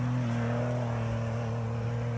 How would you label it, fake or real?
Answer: real